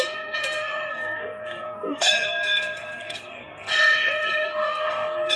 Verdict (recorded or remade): remade